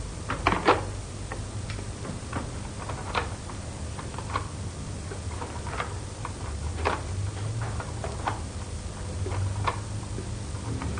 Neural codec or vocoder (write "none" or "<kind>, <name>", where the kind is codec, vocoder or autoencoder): none